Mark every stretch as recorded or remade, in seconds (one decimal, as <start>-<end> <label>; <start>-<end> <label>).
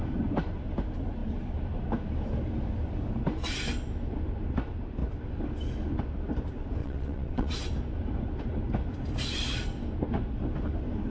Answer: 0.0-6.8 recorded; 6.8-7.5 remade; 7.5-11.1 recorded